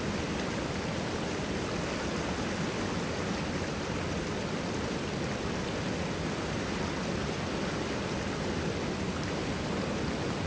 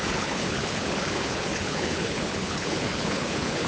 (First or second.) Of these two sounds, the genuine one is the first